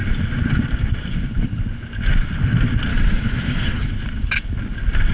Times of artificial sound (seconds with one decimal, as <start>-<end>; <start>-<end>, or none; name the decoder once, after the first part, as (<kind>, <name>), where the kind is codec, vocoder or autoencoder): 2.9-3.9 (autoencoder, DAC-VAE)